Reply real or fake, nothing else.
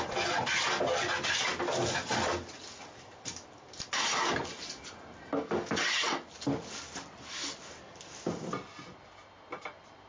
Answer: real